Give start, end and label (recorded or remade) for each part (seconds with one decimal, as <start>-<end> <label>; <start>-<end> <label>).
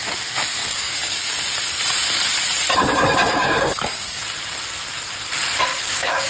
0.0-0.6 recorded; 0.6-1.3 remade; 1.3-3.3 recorded; 3.3-4.2 remade; 4.2-5.7 recorded; 5.7-6.3 remade